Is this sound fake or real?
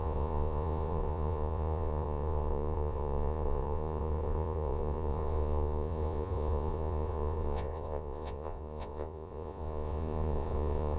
fake